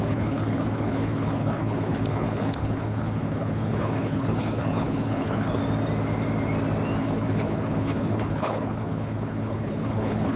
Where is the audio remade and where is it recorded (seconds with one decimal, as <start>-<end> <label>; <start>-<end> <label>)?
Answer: 0.0-5.6 remade; 5.6-7.0 recorded; 7.0-10.4 remade